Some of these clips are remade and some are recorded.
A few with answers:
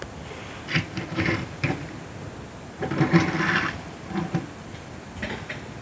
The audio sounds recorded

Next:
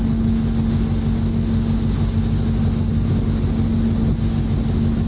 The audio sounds recorded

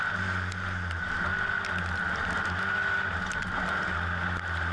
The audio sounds recorded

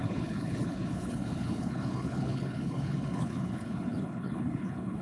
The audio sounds remade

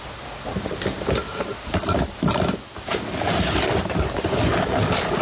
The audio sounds recorded